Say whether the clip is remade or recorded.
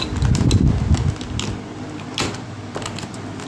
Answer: recorded